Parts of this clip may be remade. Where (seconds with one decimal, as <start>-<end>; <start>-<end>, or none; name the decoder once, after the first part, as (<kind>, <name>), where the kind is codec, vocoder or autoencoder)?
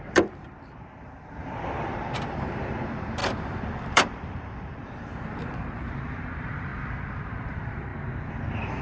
0.0-6.7 (vocoder, BigVGAN v2); 7.2-7.9